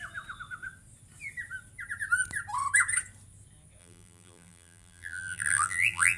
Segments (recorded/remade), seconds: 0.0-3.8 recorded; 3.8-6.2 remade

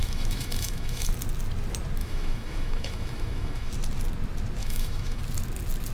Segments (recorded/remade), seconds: 0.0-1.1 remade; 1.1-2.0 recorded; 2.0-3.7 remade; 3.7-4.6 recorded; 4.6-5.2 remade; 5.2-5.9 recorded

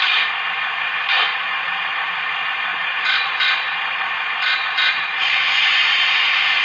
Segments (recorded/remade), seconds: 0.0-1.3 recorded; 1.3-1.9 remade; 1.9-2.7 recorded; 2.7-4.3 remade; 4.3-4.9 recorded; 4.9-5.4 remade; 5.4-6.6 recorded

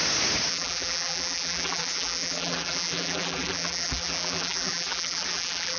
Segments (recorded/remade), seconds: 0.0-0.5 recorded; 0.5-5.8 remade

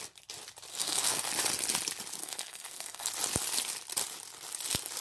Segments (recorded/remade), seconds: 0.0-0.7 recorded; 0.7-1.3 remade; 1.3-2.2 recorded; 2.2-3.1 remade; 3.1-5.0 recorded

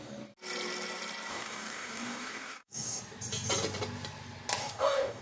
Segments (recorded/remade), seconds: 0.0-1.3 recorded; 1.3-3.0 remade; 3.0-4.6 recorded; 4.6-5.2 remade

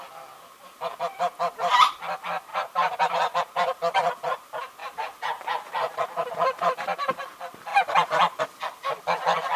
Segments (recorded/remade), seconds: 0.0-2.5 recorded; 2.5-3.8 remade; 3.8-4.8 recorded; 4.8-7.1 remade; 7.1-7.7 recorded; 7.7-8.4 remade; 8.4-9.6 recorded

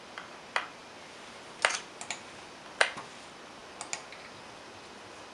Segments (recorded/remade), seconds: 0.0-5.3 recorded